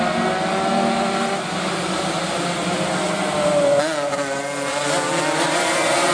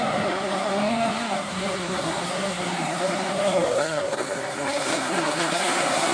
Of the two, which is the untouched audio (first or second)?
first